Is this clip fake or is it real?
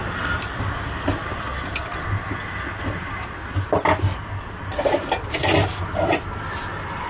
real